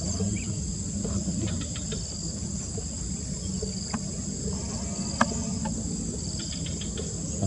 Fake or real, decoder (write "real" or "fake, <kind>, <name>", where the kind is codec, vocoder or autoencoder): real